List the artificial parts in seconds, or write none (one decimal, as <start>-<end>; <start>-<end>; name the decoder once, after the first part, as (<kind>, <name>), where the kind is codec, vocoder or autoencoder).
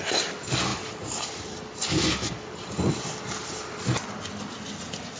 0.7-3.8 (vocoder, BigVGAN v2)